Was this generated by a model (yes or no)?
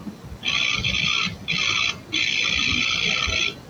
no